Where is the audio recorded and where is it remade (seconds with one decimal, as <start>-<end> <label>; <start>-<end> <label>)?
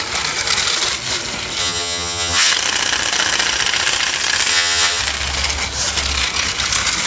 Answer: 0.0-1.6 recorded; 1.6-2.5 remade; 2.5-4.5 recorded; 4.5-5.0 remade; 5.0-7.1 recorded